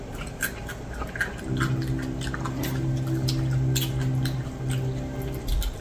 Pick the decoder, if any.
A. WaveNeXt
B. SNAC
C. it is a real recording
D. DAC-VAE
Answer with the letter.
C